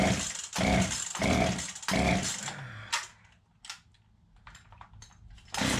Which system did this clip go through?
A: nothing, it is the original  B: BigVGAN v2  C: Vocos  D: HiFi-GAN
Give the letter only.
A